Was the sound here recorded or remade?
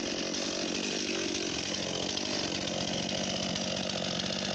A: recorded